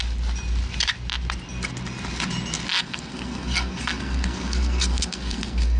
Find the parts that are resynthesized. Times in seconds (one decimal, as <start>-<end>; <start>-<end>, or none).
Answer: 2.7-5.8